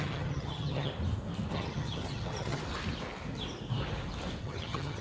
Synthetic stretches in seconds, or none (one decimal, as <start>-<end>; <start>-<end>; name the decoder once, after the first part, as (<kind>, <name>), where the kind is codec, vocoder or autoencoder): 0.0-0.9 (vocoder, HiFi-GAN); 1.5-2.6; 4.4-5.0